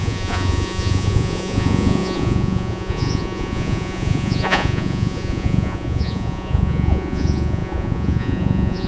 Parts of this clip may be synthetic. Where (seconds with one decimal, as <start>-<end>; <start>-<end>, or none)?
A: 0.0-8.9